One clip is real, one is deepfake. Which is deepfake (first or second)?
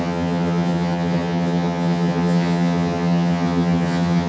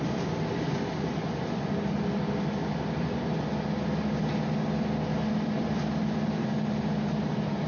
first